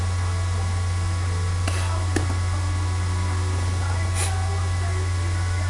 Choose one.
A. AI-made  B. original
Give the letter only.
B